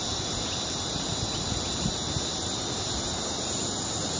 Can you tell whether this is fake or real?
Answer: real